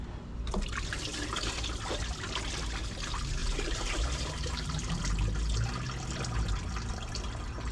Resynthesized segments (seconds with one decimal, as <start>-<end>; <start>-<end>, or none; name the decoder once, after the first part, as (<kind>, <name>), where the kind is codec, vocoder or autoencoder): 3.4-5.0 (vocoder, BigVGAN v2)